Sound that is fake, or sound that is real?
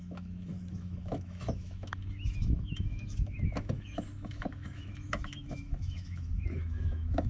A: fake